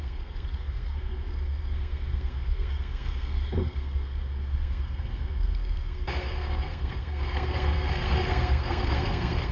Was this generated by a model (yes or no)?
yes